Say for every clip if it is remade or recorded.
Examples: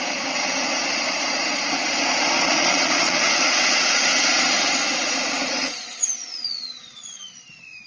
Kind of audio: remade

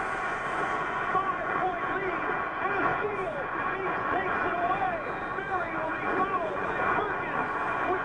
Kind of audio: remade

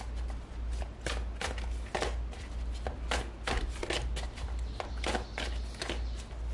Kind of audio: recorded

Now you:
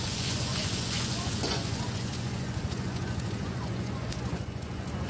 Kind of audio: remade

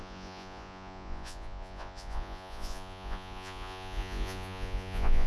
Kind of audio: remade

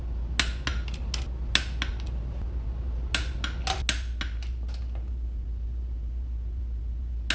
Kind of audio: recorded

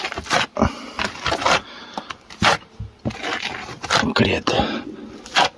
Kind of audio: recorded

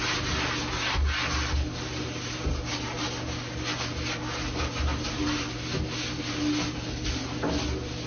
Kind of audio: recorded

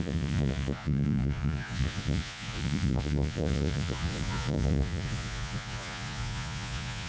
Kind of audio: remade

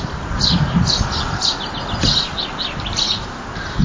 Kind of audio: recorded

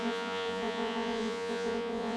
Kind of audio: remade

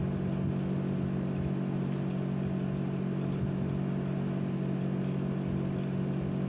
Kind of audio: recorded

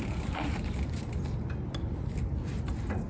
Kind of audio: recorded